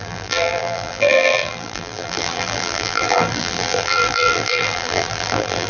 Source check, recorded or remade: remade